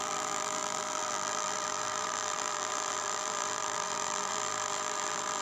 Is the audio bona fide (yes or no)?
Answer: no